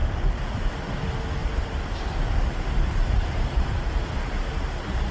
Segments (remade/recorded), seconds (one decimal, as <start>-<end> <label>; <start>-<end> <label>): 0.0-0.7 remade; 0.7-1.4 recorded; 1.4-4.5 remade; 4.5-5.1 recorded